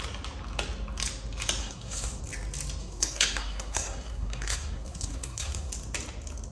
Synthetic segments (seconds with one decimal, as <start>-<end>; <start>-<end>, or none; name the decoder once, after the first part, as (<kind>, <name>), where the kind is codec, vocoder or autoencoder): 1.6-2.2 (codec, SNAC); 2.8-5.7